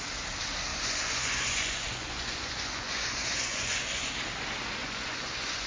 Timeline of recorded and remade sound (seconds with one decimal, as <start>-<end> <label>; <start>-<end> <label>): 0.0-0.7 recorded; 0.7-4.1 remade; 4.1-4.8 recorded; 4.8-5.7 remade